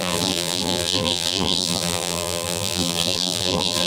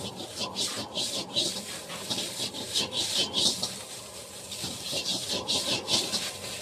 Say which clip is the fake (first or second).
first